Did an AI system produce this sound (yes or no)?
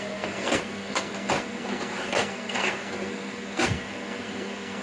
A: yes